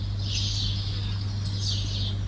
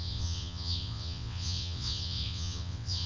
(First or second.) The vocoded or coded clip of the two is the second